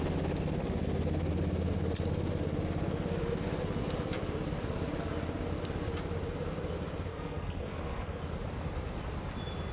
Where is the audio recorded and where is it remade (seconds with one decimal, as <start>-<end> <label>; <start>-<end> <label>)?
0.0-7.1 recorded; 7.1-8.2 remade; 8.2-9.7 recorded